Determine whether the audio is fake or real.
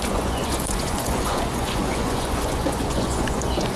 fake